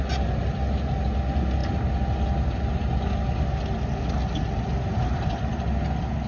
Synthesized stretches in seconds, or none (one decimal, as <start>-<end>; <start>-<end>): none